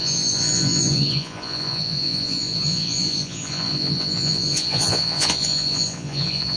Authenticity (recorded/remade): remade